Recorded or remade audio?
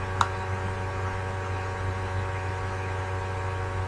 recorded